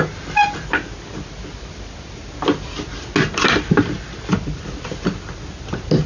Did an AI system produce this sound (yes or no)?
no